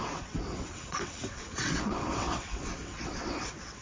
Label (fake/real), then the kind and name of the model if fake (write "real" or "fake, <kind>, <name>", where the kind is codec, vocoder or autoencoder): fake, vocoder, WaveNeXt